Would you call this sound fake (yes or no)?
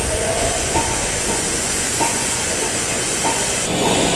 yes